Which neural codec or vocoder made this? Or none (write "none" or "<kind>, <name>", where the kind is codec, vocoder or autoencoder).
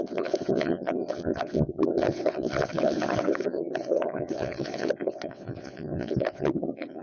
vocoder, WaveNeXt